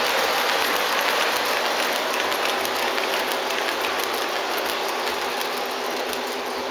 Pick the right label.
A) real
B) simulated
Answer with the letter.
A